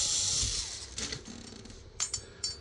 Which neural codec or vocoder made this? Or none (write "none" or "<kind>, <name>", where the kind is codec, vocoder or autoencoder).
none